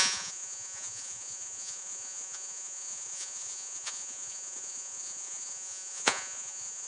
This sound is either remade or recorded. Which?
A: remade